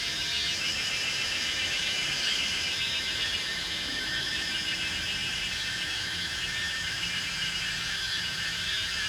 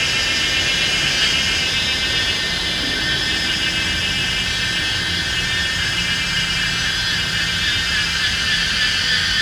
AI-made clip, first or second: first